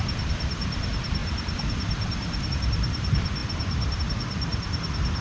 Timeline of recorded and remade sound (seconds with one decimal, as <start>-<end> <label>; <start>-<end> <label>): 0.0-5.2 remade